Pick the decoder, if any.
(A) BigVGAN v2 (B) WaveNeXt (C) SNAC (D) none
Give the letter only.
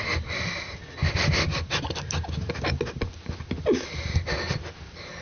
D